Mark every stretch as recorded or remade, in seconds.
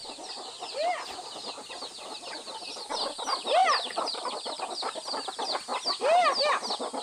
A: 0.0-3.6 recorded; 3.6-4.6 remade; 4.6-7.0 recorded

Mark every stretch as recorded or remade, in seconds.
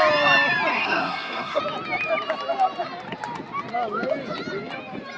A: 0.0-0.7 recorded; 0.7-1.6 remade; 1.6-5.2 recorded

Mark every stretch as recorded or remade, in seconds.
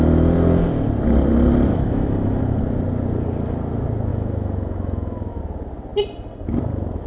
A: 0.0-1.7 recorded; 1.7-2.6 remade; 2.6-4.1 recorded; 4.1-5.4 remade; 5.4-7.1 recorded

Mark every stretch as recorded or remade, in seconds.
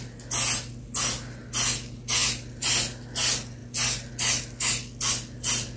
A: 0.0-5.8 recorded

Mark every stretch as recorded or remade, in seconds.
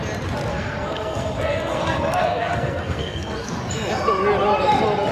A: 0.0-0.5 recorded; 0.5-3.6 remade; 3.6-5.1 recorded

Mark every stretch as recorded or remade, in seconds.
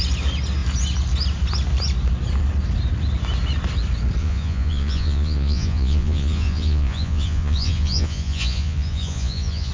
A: 0.0-4.2 recorded; 4.2-9.7 remade